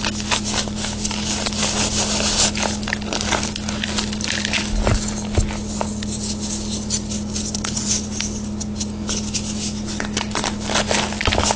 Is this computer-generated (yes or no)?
no